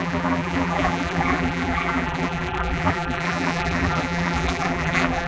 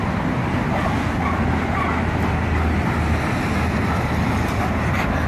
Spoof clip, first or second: first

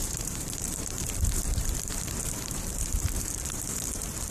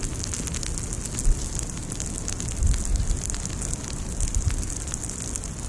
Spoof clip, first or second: first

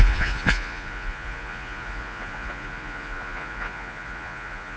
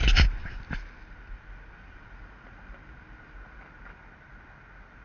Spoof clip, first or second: first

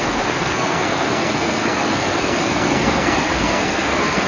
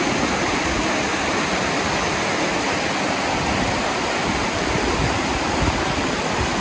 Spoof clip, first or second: first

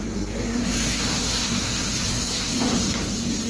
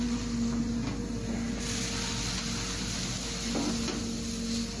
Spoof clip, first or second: first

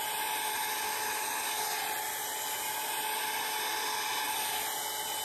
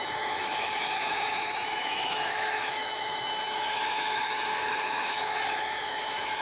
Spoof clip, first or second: second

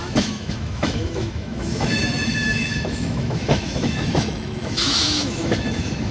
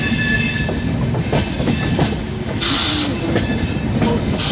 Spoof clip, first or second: first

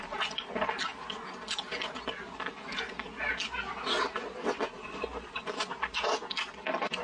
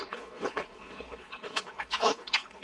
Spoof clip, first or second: second